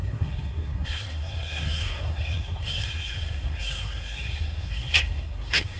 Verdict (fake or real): fake